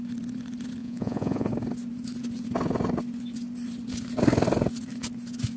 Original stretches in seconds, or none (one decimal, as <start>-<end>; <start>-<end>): 0.0-0.8; 1.5-5.6